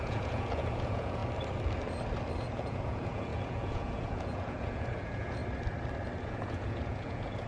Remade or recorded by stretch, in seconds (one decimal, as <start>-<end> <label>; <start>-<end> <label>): 0.0-1.2 remade; 1.2-2.4 recorded; 2.4-5.4 remade; 5.4-6.2 recorded; 6.2-7.5 remade